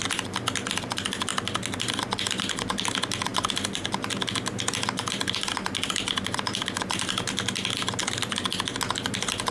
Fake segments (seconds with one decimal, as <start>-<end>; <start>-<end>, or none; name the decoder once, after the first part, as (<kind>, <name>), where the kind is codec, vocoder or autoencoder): none